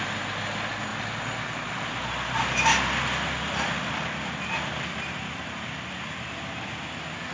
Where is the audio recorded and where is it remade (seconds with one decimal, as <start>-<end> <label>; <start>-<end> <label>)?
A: 0.0-7.3 recorded